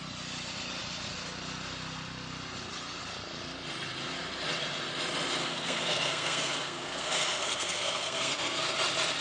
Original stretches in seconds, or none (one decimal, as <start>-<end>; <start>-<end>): 0.0-5.4; 8.7-9.2